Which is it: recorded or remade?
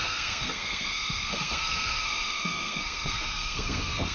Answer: remade